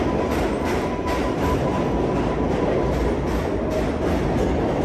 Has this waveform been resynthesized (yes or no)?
no